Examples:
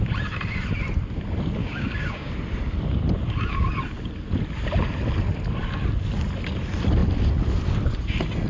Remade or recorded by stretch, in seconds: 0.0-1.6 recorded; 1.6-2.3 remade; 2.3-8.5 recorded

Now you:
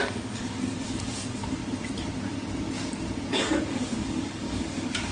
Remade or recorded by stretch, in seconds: 0.0-1.6 remade; 1.6-3.3 recorded; 3.3-5.1 remade